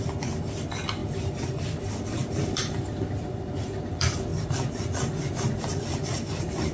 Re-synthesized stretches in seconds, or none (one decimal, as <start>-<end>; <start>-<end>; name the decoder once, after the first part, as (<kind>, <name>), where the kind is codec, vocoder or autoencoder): 0.0-4.3 (vocoder, BigVGAN v2); 5.6-6.7